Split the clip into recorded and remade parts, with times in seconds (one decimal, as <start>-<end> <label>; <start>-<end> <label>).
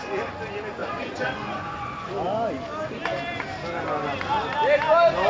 0.0-0.8 recorded; 0.8-2.1 remade; 2.1-5.3 recorded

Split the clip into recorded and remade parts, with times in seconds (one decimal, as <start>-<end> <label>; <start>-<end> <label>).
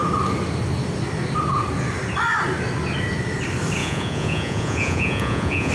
0.0-3.8 recorded; 3.8-5.7 remade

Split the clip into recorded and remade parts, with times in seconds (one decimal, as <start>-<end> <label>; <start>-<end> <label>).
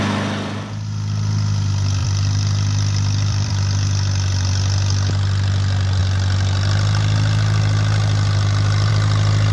0.0-2.0 recorded; 2.0-3.5 remade; 3.5-9.5 recorded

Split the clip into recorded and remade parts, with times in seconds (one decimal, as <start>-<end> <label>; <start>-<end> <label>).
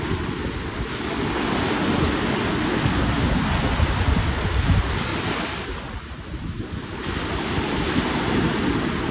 0.0-9.1 recorded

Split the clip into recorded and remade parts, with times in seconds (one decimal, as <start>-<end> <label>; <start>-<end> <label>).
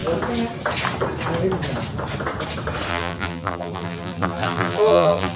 0.0-2.9 recorded; 2.9-5.4 remade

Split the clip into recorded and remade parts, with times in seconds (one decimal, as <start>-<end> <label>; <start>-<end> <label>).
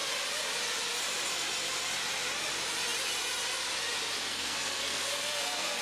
0.0-4.3 recorded; 4.3-5.8 remade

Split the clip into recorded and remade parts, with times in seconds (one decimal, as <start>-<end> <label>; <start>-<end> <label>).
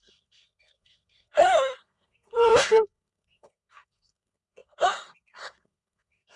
0.0-6.4 remade